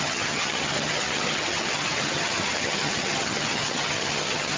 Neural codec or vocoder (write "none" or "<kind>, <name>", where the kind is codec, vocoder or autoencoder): vocoder, HiFi-GAN